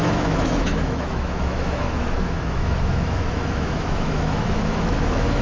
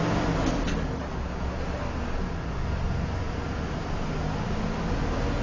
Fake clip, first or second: first